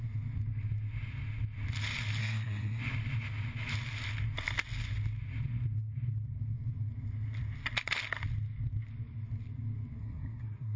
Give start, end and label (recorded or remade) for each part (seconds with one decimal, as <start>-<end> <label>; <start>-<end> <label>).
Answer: 0.0-2.2 recorded; 2.2-2.8 remade; 2.8-10.0 recorded; 10.0-10.8 remade